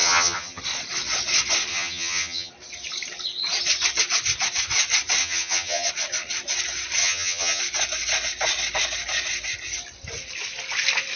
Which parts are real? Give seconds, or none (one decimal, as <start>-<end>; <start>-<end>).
0.6-1.7; 2.5-5.2; 5.9-7.0; 7.6-11.2